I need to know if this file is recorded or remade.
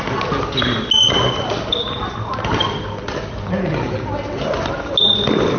recorded